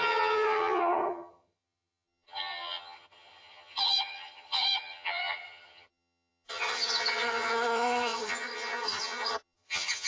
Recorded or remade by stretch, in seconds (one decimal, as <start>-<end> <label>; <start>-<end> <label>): 0.0-10.1 remade